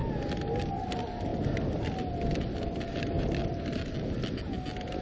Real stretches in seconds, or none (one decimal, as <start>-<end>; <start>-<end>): 0.0-5.0